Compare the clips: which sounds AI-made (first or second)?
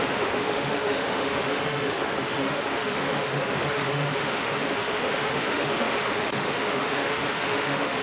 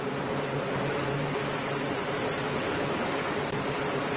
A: first